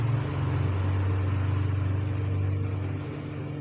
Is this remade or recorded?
recorded